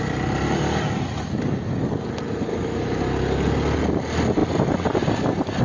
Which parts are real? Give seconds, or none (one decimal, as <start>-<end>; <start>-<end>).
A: 0.0-2.5; 3.0-5.6